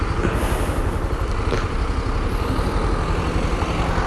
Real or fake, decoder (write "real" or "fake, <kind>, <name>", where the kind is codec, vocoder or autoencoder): real